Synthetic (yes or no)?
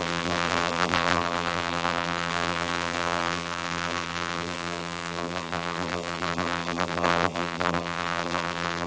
yes